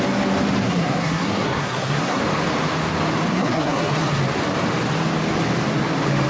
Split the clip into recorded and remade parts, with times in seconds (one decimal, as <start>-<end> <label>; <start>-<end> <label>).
0.0-0.6 recorded; 0.6-2.2 remade; 2.2-3.3 recorded; 3.3-4.2 remade; 4.2-6.3 recorded